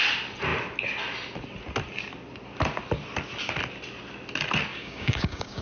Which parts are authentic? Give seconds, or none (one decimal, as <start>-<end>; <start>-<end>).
0.0-4.7

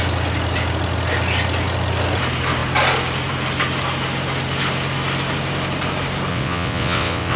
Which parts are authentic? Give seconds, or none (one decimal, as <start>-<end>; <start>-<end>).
0.0-6.3

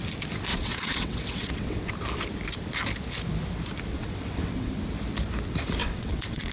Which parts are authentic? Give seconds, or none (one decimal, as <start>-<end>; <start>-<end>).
0.0-0.5; 1.9-3.9; 4.7-5.8